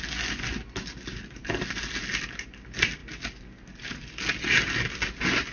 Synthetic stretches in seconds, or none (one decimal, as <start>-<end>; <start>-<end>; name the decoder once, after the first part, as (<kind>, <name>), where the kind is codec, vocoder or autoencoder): none